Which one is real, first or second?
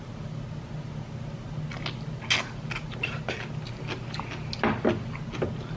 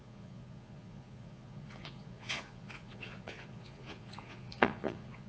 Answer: first